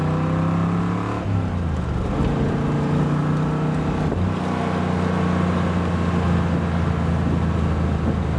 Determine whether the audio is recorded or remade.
recorded